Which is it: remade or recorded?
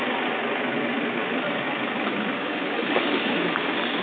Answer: recorded